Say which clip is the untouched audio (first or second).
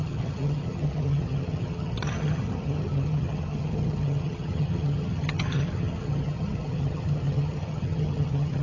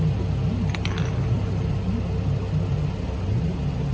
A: second